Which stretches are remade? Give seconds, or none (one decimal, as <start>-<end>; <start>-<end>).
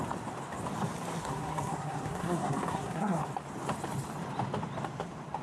1.2-3.3